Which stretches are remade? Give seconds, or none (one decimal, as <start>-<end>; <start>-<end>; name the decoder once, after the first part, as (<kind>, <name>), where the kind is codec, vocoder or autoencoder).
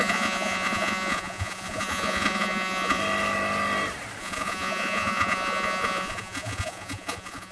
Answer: 0.0-3.0 (vocoder, Vocos); 4.2-7.5